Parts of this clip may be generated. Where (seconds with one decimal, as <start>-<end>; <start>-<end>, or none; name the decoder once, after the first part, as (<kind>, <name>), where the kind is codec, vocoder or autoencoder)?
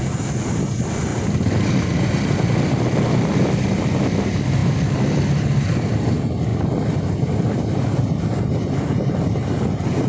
1.1-1.7 (vocoder, BigVGAN v2); 4.6-5.4; 6.5-8.2